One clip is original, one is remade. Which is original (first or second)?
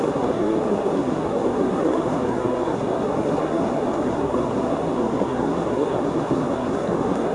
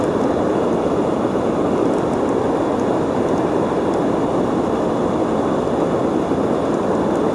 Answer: second